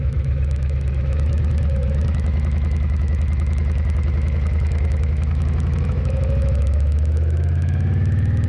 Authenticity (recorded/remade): remade